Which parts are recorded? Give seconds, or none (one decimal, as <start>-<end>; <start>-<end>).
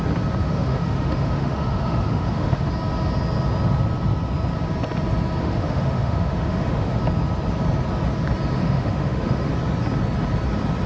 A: 0.0-0.4; 2.7-5.4; 7.0-8.6; 9.5-10.9